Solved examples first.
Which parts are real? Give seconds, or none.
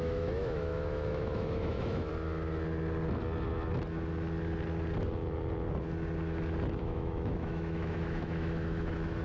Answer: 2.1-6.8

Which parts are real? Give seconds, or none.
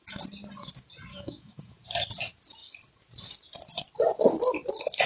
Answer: 0.0-1.1; 1.7-5.1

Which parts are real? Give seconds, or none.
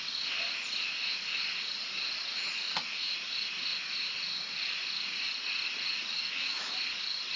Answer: 0.0-6.1; 6.7-7.4